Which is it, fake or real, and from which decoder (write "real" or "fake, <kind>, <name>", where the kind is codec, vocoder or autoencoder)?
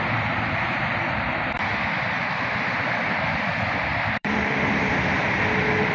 fake, vocoder, BigVGAN v2